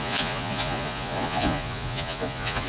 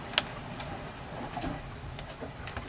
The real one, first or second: second